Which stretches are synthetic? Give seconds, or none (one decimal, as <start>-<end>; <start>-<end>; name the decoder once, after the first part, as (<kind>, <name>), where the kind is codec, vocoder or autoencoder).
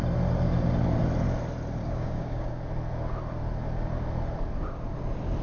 1.8-2.6 (codec, DAC)